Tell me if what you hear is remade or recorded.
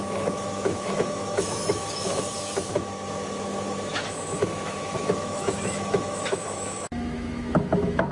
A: remade